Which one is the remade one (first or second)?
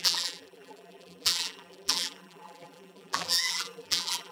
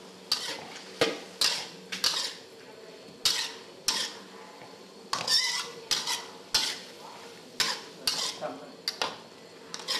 first